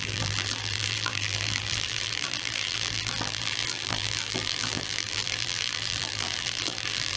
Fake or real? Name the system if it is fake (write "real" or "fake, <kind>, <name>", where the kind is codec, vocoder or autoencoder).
fake, vocoder, BigVGAN v2